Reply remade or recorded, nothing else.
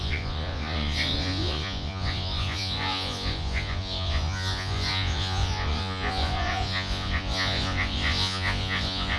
remade